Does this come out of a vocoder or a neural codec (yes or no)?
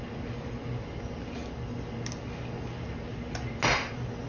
no